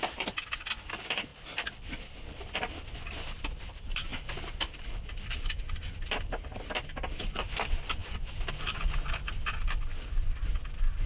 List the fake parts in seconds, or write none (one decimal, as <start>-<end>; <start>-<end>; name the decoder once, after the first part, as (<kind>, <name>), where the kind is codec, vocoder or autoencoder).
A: none